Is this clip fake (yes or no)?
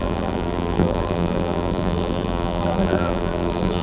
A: yes